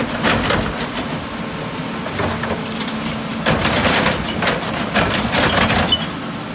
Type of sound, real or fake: real